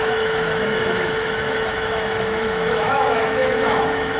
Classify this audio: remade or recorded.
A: remade